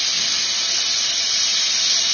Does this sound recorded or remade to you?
recorded